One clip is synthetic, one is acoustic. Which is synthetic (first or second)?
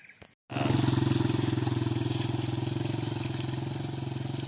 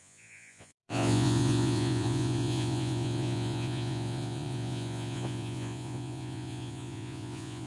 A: second